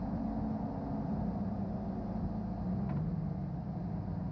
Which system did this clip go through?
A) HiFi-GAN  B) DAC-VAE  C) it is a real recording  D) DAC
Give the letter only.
C